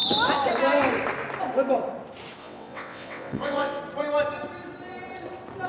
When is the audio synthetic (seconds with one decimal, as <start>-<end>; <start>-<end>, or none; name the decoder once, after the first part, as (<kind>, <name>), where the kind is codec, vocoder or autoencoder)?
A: 2.4-3.8 (vocoder, WaveNeXt)